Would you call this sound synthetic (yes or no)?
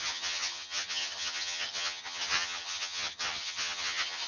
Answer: yes